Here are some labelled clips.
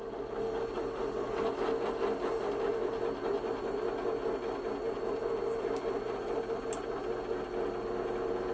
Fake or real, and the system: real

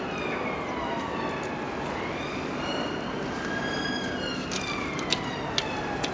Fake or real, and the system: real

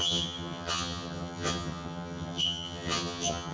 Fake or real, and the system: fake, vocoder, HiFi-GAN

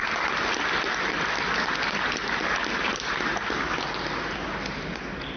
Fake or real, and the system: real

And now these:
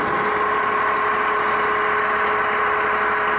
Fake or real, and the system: real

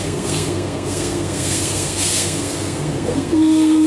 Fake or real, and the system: fake, codec, SNAC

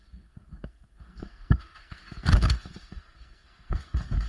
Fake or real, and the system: fake, codec, SNAC